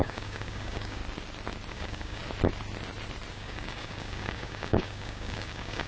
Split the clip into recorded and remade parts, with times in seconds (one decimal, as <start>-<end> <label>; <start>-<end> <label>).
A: 0.0-1.0 remade; 1.0-1.7 recorded; 1.7-2.2 remade; 2.2-3.3 recorded; 3.3-5.9 remade